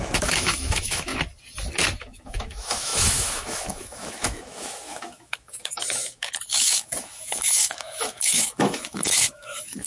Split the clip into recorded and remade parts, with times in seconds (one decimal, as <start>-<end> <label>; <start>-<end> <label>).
0.0-1.1 remade; 1.1-2.0 recorded; 2.0-9.9 remade